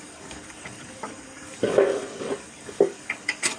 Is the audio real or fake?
fake